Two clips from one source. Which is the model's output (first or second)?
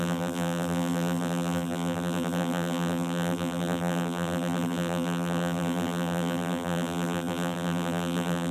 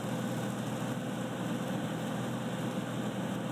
first